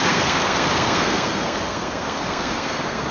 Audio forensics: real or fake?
fake